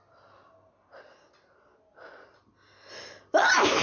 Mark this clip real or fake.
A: real